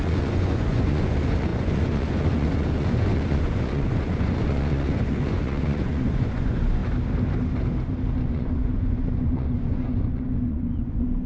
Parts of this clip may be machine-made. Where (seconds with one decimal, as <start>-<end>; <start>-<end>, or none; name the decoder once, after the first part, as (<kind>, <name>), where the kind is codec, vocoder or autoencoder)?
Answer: 0.0-6.8 (vocoder, Vocos); 8.2-11.3